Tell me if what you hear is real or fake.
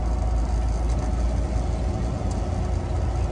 real